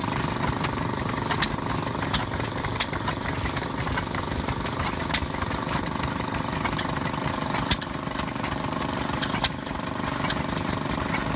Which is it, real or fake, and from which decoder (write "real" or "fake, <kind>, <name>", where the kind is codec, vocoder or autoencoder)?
fake, vocoder, BigVGAN v2